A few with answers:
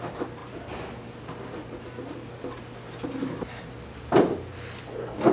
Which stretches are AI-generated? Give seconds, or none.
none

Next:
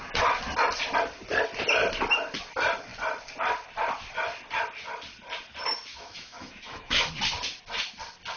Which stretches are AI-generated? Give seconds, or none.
5.9-7.1 (autoencoder, DAC-VAE)